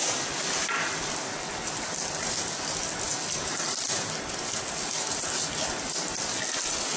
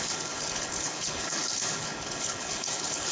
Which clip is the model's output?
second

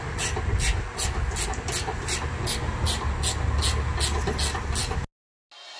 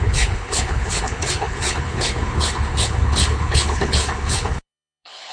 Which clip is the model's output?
second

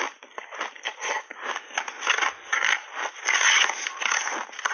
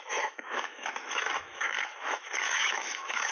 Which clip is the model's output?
second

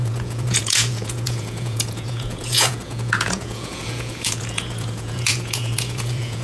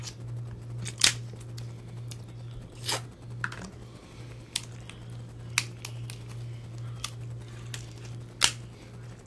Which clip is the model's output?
first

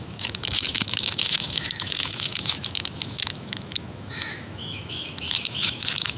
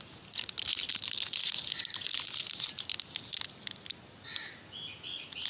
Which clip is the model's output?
first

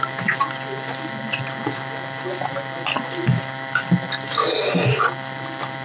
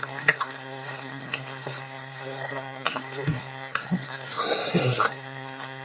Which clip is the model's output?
second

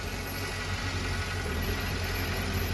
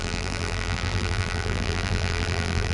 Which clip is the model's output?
second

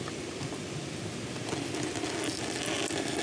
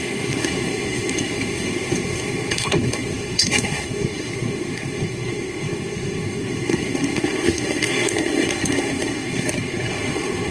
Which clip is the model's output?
second